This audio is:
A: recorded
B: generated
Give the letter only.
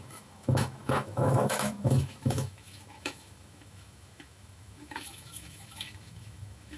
B